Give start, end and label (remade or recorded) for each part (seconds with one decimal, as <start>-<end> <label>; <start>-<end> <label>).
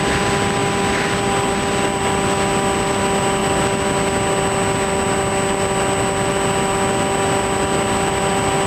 0.0-8.7 recorded